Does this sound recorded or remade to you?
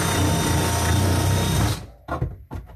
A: recorded